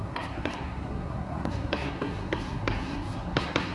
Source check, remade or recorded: remade